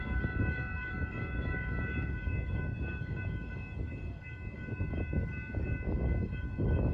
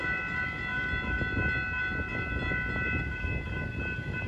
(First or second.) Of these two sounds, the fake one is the first